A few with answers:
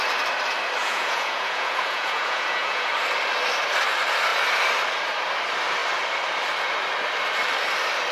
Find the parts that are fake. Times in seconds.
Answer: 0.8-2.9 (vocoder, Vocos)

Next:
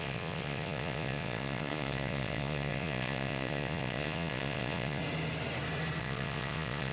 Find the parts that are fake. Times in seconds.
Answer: 0.0-5.0 (vocoder, Vocos); 6.0-6.9

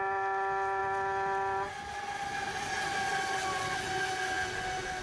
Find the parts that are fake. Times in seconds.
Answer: none